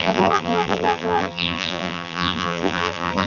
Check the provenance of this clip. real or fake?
fake